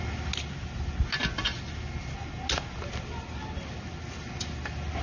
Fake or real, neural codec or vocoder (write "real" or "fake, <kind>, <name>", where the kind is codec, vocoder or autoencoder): real